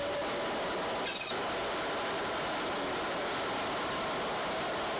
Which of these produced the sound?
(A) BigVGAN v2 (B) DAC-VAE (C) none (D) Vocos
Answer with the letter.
C